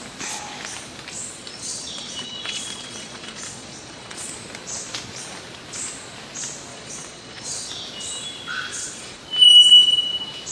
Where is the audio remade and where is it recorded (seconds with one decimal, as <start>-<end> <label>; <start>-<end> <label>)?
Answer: 0.0-1.3 recorded; 1.3-4.3 remade; 4.3-6.7 recorded; 6.7-7.7 remade; 7.7-8.7 recorded; 8.7-9.2 remade; 9.2-10.5 recorded